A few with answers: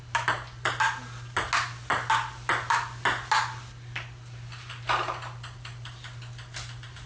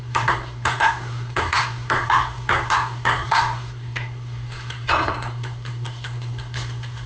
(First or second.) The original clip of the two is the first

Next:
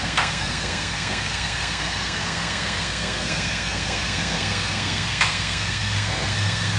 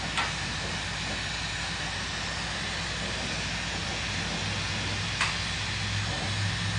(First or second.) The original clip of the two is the second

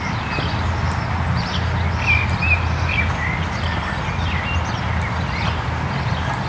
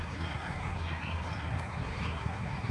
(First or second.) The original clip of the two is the first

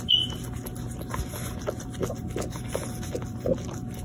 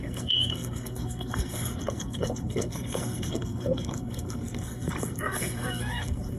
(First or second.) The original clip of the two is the first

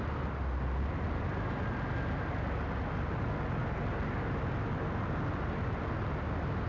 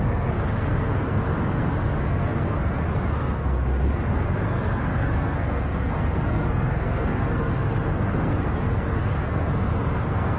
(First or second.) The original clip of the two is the first